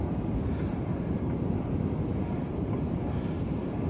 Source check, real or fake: fake